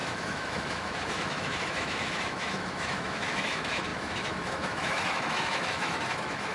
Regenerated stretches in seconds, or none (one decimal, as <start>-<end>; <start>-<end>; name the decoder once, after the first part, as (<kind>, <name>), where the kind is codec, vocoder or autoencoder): 0.0-6.5 (autoencoder, DAC-VAE)